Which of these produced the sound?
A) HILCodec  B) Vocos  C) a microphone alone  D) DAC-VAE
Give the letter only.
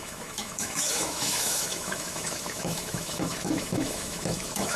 D